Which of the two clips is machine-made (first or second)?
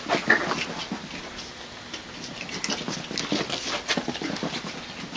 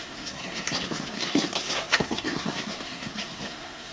second